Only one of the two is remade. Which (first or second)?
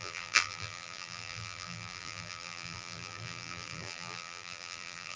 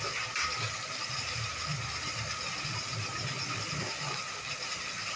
first